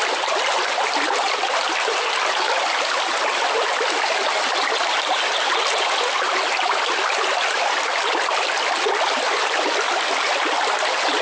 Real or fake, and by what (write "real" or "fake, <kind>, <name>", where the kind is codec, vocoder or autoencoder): real